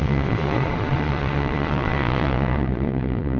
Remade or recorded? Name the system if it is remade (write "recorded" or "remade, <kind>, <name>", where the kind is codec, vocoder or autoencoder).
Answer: remade, vocoder, Vocos